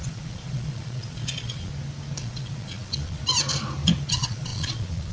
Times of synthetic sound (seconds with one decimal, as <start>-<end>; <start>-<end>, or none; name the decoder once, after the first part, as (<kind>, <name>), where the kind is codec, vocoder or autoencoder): 0.0-1.7 (vocoder, Vocos); 2.2-3.2; 4.1-5.1